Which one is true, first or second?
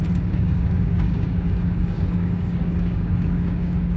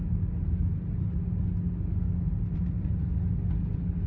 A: second